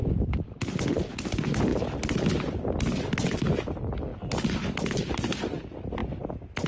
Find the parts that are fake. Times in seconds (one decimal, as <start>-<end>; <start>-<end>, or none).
0.0-0.6